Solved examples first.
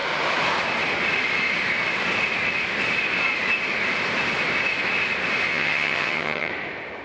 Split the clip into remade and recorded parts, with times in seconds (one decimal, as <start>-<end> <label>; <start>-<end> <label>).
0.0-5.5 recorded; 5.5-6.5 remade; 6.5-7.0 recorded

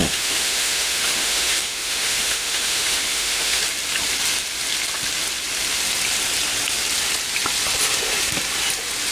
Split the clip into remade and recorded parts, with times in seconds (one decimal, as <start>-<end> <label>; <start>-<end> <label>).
0.0-3.6 remade; 3.6-9.1 recorded

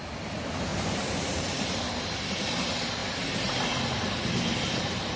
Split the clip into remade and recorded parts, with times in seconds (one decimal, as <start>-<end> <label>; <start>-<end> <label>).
0.0-0.7 recorded; 0.7-1.8 remade; 1.8-5.2 recorded